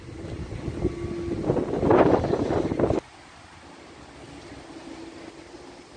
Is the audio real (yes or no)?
yes